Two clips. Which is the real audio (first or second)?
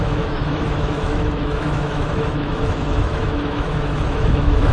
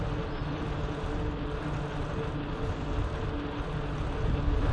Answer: second